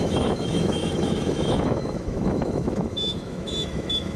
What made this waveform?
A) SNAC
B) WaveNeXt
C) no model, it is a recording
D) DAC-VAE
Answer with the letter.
D